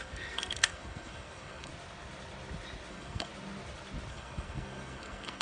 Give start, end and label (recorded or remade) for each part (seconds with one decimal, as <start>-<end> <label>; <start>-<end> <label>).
0.0-1.7 remade; 1.7-2.9 recorded; 2.9-3.3 remade; 3.3-4.1 recorded; 4.1-5.4 remade